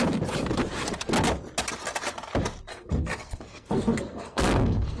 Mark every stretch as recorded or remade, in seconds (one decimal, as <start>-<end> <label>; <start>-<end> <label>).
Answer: 0.0-2.7 recorded; 2.7-5.0 remade